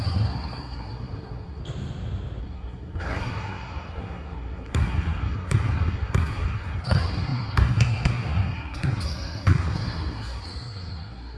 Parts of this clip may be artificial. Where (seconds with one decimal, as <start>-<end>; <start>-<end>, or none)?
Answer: 0.0-1.6; 2.4-11.4